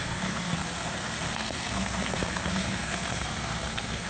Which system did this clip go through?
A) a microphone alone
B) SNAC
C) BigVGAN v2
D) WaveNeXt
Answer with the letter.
B